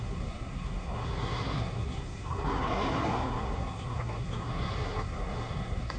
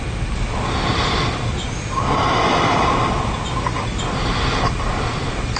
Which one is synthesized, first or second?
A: first